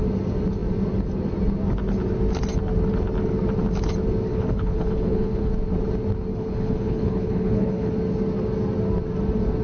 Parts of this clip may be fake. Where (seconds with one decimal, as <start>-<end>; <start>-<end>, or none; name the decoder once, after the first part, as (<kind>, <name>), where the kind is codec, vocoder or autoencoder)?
4.3-5.5 (codec, HILCodec); 6.3-7.9